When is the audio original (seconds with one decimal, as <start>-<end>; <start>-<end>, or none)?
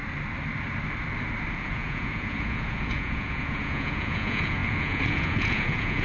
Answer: 0.0-1.6